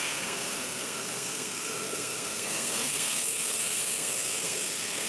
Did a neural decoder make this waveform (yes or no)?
yes